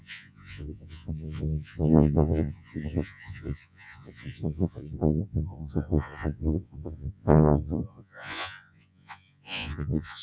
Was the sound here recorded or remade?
remade